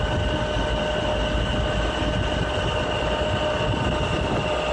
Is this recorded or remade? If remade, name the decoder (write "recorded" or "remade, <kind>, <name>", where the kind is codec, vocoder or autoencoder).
recorded